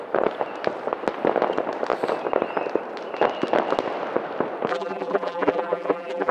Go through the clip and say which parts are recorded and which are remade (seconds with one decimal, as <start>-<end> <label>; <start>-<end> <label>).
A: 0.0-4.7 recorded; 4.7-6.3 remade